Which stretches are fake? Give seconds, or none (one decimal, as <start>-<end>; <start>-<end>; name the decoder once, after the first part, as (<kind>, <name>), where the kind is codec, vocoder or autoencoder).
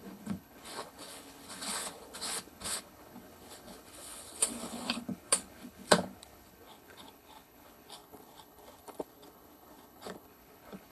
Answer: 0.0-10.9 (codec, HILCodec)